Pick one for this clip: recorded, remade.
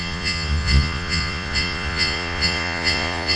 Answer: remade